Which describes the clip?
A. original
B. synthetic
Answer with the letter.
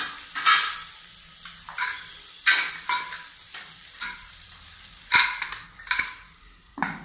B